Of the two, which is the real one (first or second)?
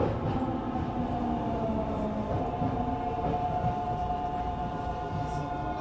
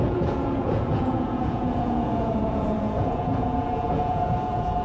first